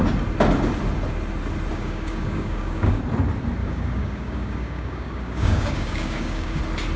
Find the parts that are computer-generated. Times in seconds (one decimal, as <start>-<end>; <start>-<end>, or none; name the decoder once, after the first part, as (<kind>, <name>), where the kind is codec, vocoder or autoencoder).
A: 1.7-3.0 (codec, DAC); 3.6-6.6